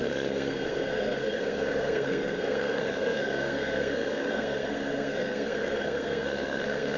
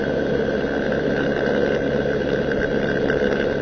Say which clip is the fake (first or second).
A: first